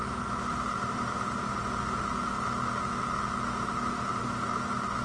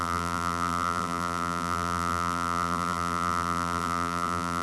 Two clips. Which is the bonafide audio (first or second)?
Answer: first